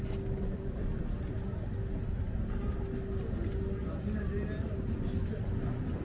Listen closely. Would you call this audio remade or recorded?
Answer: recorded